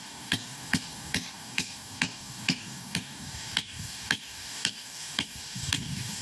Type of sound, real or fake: fake